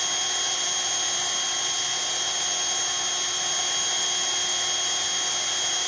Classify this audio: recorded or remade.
recorded